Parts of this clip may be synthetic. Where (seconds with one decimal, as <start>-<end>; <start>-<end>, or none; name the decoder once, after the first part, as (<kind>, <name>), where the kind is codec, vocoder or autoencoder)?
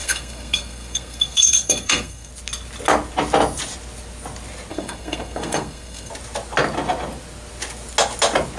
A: 0.0-2.3 (codec, SNAC); 4.7-6.1